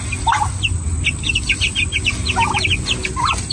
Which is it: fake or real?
real